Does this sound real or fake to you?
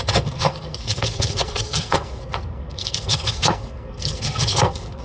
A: fake